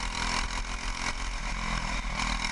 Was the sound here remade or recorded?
recorded